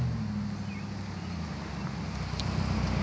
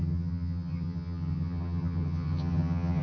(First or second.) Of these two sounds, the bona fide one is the first